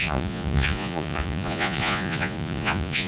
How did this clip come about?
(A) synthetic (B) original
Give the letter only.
A